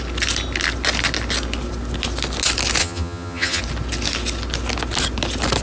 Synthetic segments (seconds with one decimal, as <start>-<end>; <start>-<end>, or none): 2.8-3.6